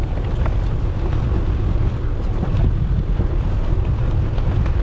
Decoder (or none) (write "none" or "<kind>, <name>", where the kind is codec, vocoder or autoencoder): none